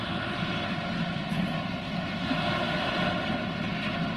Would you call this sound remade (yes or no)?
no